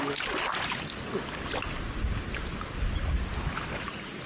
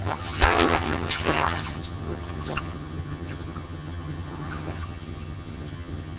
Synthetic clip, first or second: second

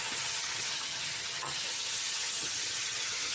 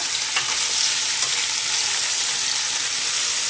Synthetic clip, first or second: first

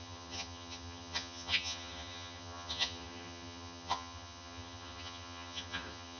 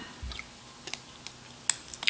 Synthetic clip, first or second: first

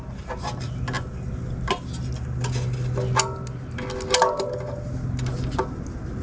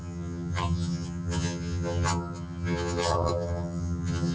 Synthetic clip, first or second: second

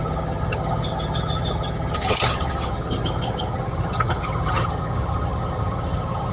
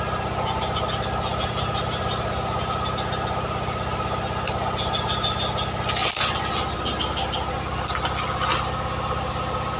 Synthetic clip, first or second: first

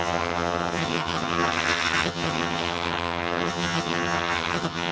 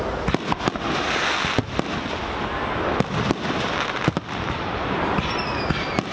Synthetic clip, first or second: first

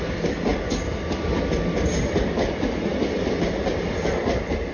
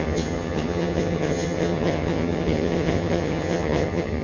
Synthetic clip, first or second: second